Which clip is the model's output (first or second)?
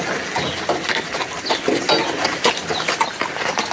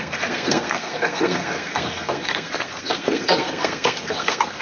second